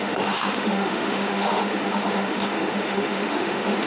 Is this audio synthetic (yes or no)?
yes